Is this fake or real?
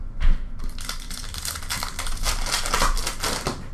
real